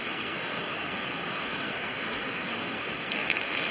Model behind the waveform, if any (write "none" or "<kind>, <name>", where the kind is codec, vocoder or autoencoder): codec, SNAC